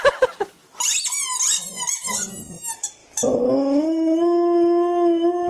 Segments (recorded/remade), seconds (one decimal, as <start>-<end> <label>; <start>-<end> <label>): 0.0-5.5 recorded